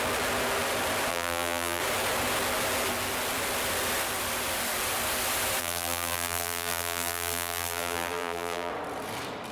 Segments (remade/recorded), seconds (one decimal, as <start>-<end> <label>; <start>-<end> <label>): 0.0-1.1 recorded; 1.1-1.8 remade; 1.8-5.6 recorded; 5.6-8.7 remade; 8.7-9.5 recorded